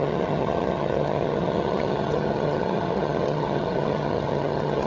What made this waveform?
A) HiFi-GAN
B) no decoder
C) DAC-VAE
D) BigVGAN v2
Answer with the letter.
A